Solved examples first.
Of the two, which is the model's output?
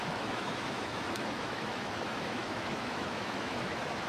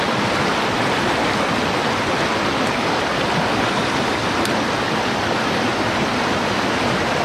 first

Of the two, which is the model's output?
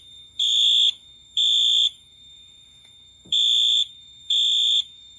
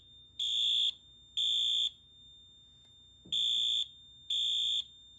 first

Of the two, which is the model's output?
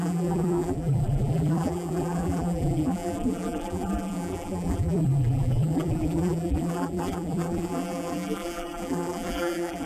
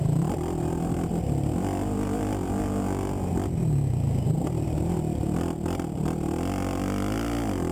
first